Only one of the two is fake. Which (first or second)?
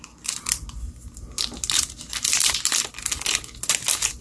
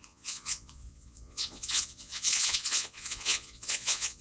second